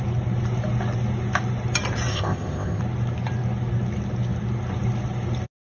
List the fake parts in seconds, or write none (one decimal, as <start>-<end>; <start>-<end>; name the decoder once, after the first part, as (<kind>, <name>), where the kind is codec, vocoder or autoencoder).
2.1-2.8 (codec, ZipCodec)